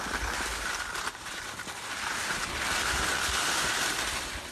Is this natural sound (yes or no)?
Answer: yes